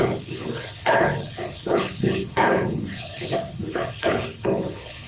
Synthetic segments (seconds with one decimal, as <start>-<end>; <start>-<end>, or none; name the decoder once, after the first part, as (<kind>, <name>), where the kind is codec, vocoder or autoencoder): 0.0-5.1 (codec, HILCodec)